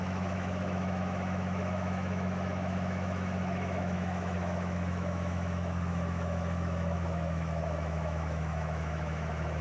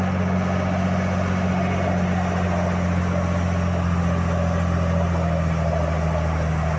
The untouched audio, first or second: second